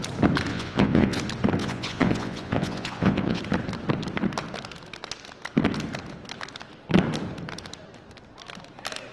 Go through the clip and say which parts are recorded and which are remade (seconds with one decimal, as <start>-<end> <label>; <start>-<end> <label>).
0.0-0.5 recorded; 0.5-1.2 remade; 1.2-1.6 recorded; 1.6-3.4 remade; 3.4-9.1 recorded